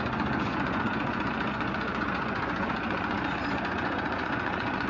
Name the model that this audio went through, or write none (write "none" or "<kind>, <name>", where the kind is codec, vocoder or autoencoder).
vocoder, Vocos